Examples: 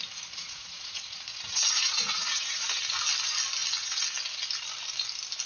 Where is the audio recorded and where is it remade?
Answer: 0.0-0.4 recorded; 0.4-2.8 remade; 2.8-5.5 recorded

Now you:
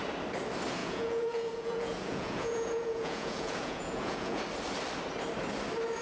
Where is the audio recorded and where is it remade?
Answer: 0.0-0.8 recorded; 0.8-4.4 remade; 4.4-6.0 recorded

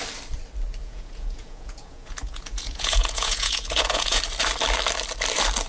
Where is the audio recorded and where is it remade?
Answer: 0.0-0.8 recorded; 0.8-4.2 remade; 4.2-5.7 recorded